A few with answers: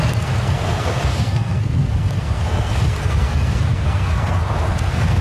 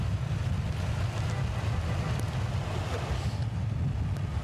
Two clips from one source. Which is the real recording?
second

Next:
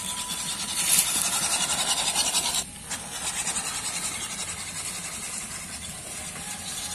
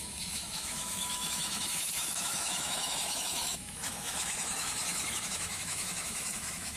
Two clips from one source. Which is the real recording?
first